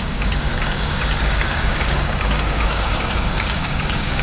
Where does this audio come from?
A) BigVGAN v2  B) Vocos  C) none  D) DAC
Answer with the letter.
D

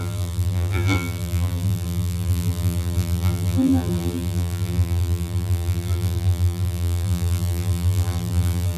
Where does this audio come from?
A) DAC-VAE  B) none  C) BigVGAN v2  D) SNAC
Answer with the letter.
C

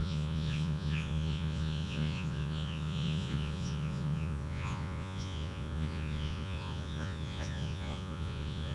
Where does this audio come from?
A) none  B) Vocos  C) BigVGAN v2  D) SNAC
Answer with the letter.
B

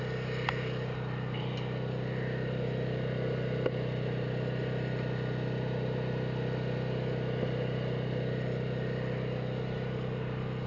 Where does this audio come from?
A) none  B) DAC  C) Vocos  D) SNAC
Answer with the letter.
A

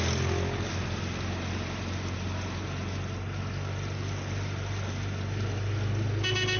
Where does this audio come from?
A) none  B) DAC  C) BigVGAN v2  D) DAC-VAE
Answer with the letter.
A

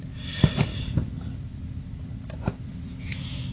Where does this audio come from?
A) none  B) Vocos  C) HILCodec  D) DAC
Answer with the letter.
A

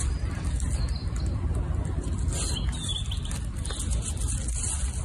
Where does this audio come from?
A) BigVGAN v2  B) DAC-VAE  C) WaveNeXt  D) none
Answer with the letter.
D